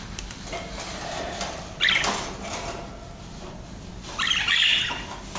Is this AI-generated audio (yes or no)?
no